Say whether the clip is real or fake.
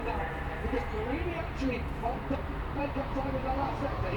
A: fake